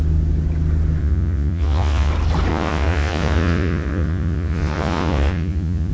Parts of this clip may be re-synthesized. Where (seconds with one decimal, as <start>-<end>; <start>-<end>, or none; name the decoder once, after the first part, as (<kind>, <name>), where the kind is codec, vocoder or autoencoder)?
1.0-2.1 (vocoder, Vocos); 2.5-5.9